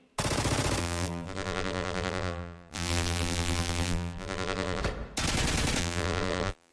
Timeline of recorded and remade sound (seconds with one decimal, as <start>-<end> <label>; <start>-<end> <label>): 0.0-0.8 recorded; 0.8-4.8 remade; 4.8-5.8 recorded; 5.8-6.7 remade